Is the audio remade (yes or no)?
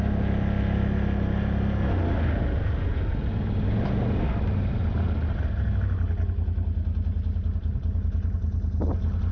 no